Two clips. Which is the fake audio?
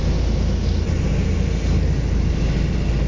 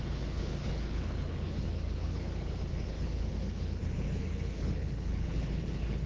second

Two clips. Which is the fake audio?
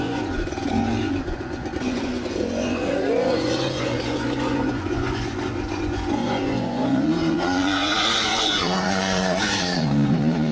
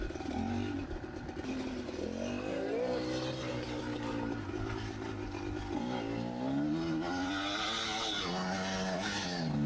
first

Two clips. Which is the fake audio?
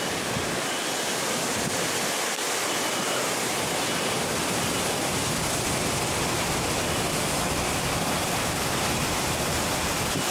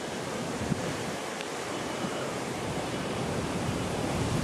second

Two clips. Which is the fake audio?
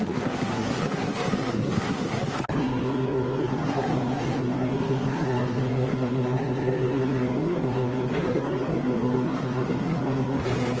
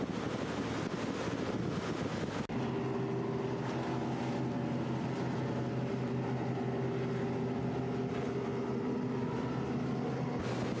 first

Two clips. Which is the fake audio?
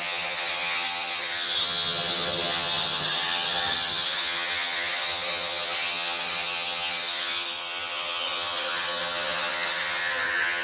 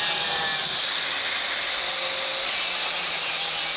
first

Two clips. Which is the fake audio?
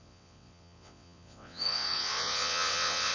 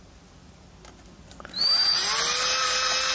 first